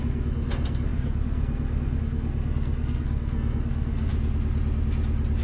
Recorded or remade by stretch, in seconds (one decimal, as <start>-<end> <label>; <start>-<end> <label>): 0.0-4.1 remade; 4.1-5.4 recorded